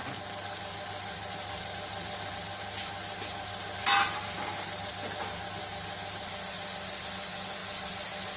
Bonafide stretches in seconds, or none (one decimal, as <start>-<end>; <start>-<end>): 0.0-8.4